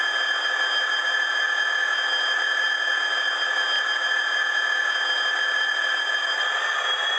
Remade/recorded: recorded